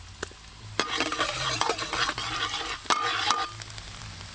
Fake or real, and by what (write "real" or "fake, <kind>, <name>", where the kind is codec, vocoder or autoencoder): real